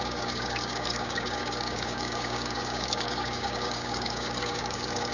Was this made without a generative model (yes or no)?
no